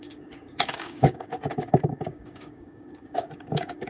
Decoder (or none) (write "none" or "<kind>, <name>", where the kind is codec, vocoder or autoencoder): codec, DAC